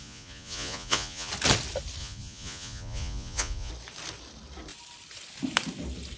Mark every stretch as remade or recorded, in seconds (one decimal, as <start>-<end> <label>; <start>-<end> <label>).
0.0-1.3 remade; 1.3-2.0 recorded; 2.0-3.7 remade; 3.7-6.2 recorded